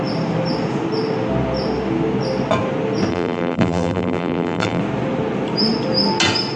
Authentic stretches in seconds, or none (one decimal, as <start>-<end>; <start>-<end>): 0.0-3.1; 4.8-6.6